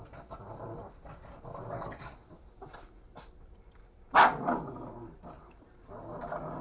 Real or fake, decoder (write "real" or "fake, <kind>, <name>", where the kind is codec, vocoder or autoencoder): real